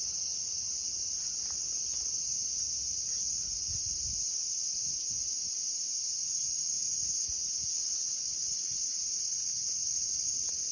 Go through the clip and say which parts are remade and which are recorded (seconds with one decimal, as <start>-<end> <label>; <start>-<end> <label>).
0.0-7.6 recorded; 7.6-10.1 remade; 10.1-10.7 recorded